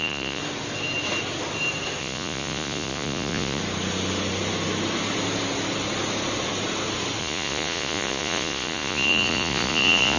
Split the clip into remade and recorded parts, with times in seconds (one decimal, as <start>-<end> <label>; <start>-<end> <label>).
0.0-0.4 remade; 0.4-2.0 recorded; 2.0-3.6 remade; 3.6-7.2 recorded; 7.2-10.2 remade